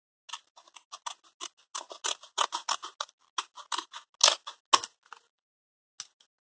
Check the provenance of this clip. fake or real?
real